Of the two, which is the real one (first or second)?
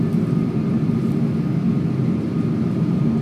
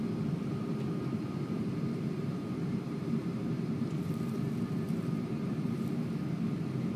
first